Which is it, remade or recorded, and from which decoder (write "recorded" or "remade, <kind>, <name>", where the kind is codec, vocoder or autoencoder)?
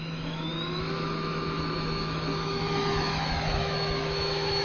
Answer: remade, autoencoder, DAC-VAE